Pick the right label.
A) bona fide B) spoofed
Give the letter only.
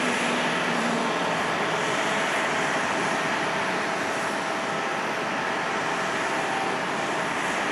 B